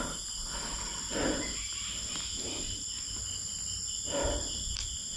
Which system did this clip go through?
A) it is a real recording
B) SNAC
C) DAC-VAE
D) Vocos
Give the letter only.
A